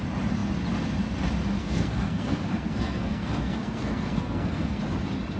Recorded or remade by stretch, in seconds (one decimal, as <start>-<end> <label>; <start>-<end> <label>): 0.0-1.6 recorded; 1.6-4.8 remade; 4.8-5.4 recorded

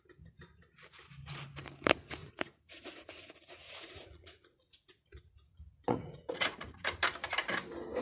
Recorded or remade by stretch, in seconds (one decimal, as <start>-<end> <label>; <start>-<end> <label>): 0.0-2.2 recorded; 2.2-7.0 remade; 7.0-8.0 recorded

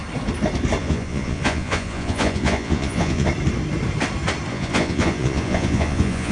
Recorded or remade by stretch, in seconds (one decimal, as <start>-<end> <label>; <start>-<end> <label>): 0.0-0.8 recorded; 0.8-3.3 remade; 3.3-4.5 recorded; 4.5-6.3 remade

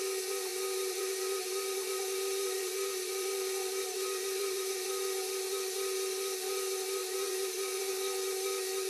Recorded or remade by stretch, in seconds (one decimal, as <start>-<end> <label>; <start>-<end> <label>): 0.0-0.5 recorded; 0.5-4.9 remade; 4.9-7.0 recorded; 7.0-7.9 remade; 7.9-8.9 recorded

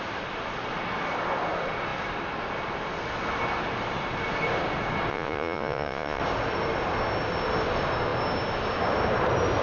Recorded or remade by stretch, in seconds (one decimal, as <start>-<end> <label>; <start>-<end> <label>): 0.0-5.1 recorded; 5.1-6.2 remade; 6.2-9.6 recorded

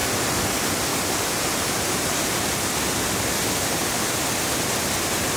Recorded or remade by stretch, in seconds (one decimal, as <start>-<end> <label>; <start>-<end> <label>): 0.0-0.5 remade; 0.5-0.9 recorded; 0.9-2.5 remade; 2.5-5.4 recorded